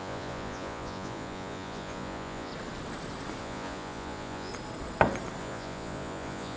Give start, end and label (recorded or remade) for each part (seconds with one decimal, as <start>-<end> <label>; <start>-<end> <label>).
0.0-2.5 remade; 2.5-3.4 recorded; 3.4-4.5 remade; 4.5-5.4 recorded; 5.4-6.6 remade